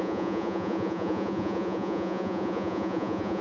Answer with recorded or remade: remade